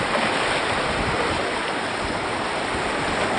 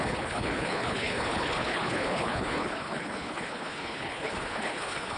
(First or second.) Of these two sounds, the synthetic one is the second